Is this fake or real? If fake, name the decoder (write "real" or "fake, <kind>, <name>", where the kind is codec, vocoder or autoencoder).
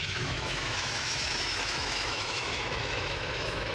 fake, autoencoder, DAC-VAE